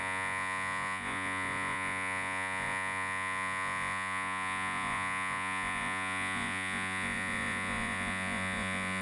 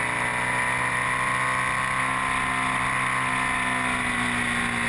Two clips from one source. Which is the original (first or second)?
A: second